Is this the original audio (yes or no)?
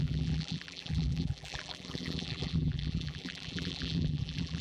no